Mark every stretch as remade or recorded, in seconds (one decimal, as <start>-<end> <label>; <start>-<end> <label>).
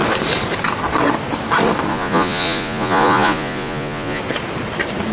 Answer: 0.0-1.9 recorded; 1.9-4.2 remade; 4.2-5.1 recorded